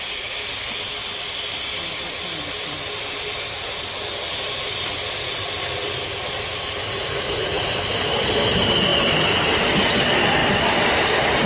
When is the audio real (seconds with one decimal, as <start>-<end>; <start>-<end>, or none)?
0.0-6.8; 7.7-11.5